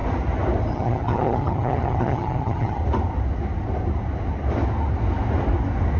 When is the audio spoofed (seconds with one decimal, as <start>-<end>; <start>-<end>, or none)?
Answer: 0.7-2.8